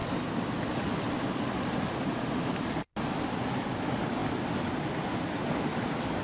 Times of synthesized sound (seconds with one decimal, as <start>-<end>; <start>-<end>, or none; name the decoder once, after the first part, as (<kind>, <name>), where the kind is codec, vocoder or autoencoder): none